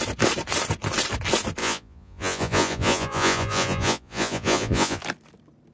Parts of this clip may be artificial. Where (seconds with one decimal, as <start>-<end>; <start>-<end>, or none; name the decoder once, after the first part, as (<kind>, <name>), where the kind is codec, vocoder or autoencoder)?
1.6-5.0 (vocoder, Vocos)